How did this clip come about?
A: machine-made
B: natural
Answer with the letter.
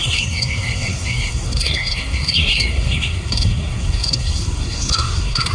A